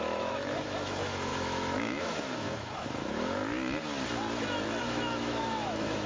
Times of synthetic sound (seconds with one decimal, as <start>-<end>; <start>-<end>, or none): 0.0-3.4; 4.8-6.1

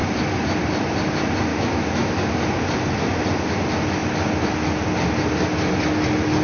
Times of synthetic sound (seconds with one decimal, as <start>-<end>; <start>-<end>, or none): 1.5-2.1

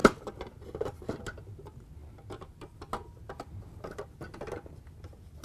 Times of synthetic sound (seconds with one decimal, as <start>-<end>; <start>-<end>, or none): none